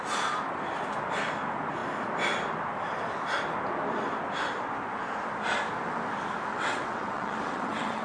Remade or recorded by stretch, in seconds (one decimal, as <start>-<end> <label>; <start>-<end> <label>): 0.0-6.5 recorded; 6.5-8.0 remade